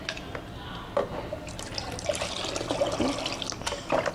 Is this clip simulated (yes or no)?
no